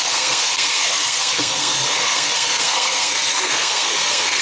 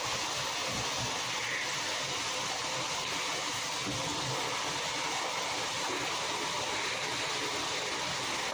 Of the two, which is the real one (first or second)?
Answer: second